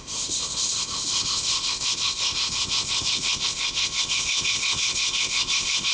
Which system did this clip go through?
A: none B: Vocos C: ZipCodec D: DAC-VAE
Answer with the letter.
C